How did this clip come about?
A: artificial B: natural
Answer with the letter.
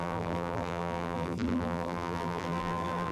A